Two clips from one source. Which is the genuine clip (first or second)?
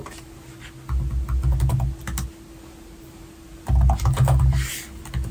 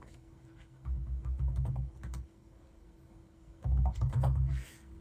first